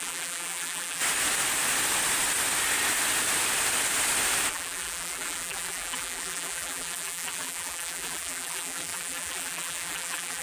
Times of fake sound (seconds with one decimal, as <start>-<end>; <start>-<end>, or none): 0.0-1.0; 4.5-10.4